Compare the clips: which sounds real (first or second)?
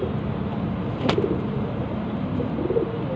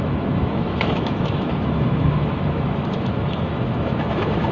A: first